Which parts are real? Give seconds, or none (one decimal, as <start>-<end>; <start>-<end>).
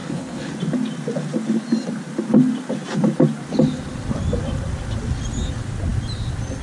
0.5-6.6